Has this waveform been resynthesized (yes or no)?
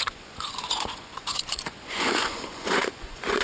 yes